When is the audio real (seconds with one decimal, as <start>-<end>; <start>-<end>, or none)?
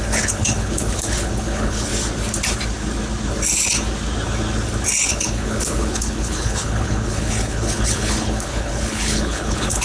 1.9-5.1